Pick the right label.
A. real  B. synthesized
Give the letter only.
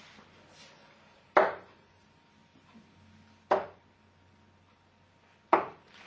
A